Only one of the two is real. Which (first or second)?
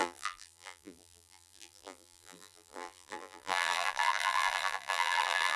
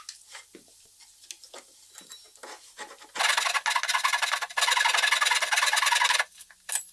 second